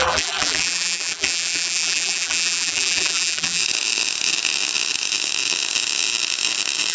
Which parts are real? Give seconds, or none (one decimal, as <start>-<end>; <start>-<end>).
3.6-6.9

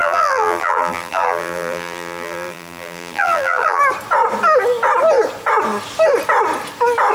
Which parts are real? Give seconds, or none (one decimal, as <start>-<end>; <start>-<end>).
3.8-7.1